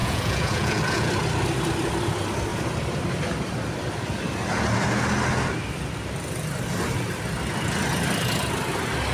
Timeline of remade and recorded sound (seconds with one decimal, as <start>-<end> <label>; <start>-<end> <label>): 0.0-1.1 remade; 1.1-9.1 recorded